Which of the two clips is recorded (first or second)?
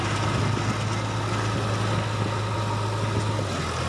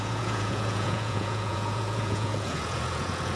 first